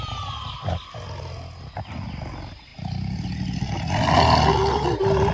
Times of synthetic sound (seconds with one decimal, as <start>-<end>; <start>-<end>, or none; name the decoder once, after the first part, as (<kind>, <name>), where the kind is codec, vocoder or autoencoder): none